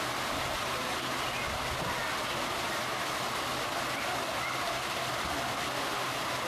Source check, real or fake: real